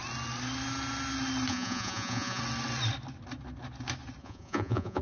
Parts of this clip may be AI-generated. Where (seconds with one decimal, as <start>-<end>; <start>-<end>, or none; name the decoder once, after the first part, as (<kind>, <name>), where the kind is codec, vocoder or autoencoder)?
1.5-2.4 (vocoder, Vocos); 4.2-5.0